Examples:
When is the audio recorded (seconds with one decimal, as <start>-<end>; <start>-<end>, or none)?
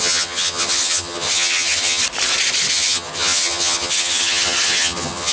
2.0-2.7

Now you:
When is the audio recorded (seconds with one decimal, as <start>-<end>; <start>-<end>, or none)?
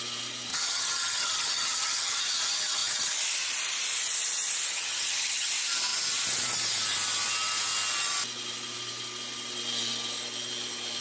0.0-0.5; 2.2-4.7; 5.5-11.0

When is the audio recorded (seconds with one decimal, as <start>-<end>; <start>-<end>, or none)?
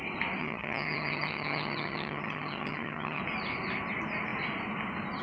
0.0-0.4; 3.2-5.2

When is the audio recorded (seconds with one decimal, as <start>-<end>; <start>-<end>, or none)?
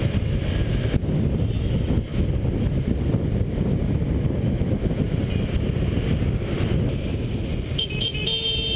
0.0-8.8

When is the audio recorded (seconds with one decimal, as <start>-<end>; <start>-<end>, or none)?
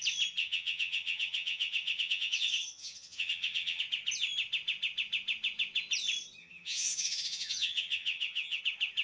0.0-0.4; 3.8-6.4; 8.6-9.0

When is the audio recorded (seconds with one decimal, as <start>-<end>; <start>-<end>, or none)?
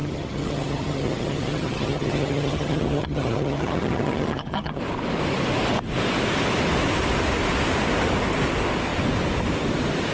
4.8-10.1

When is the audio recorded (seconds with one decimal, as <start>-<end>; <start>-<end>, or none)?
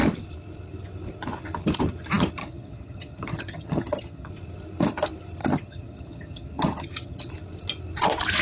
0.0-2.4; 4.3-5.4; 7.3-8.4